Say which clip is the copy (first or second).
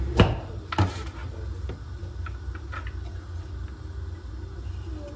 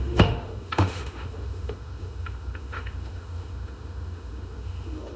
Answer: second